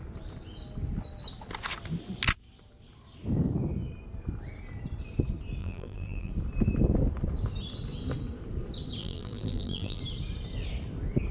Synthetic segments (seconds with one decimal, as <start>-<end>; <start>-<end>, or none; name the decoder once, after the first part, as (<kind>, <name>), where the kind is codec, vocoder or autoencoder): 5.6-6.3 (vocoder, BigVGAN v2); 9.0-10.0